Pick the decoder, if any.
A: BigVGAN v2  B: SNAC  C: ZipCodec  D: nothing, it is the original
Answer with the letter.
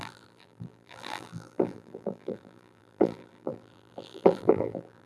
A